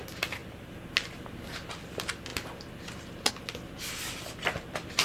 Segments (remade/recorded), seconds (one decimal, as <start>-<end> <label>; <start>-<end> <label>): 0.0-5.0 recorded